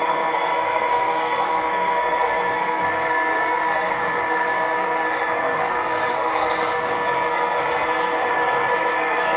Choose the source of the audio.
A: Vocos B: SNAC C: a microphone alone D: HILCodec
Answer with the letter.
B